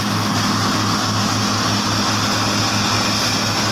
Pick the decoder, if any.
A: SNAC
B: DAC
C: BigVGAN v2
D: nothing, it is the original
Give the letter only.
D